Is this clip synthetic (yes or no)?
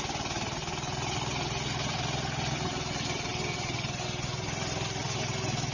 no